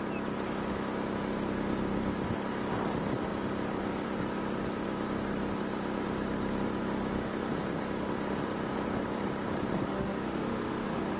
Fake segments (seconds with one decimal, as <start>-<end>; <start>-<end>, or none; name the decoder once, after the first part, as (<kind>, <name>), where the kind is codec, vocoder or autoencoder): 9.9-11.2 (autoencoder, DAC-VAE)